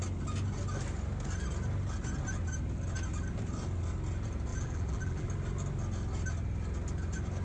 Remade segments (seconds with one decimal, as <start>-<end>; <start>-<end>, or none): 4.5-5.3